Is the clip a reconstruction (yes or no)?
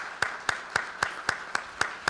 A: no